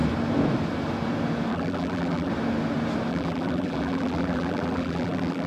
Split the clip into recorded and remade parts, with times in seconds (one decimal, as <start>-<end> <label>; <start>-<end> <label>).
0.0-1.5 recorded; 1.5-2.3 remade; 2.3-3.1 recorded; 3.1-5.5 remade